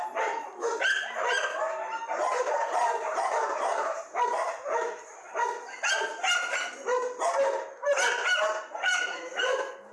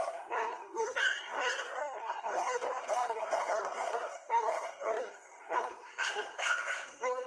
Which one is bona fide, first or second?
first